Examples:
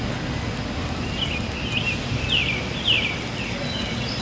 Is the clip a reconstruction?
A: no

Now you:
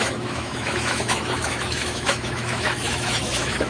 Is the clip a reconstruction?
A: yes